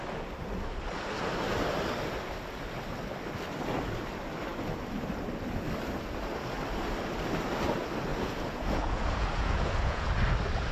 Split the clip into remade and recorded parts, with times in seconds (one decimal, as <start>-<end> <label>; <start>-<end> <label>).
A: 0.0-8.1 recorded; 8.1-10.1 remade; 10.1-10.7 recorded